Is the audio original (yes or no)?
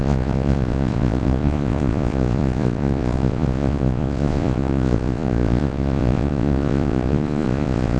no